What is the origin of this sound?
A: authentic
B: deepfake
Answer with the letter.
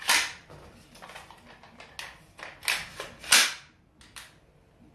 A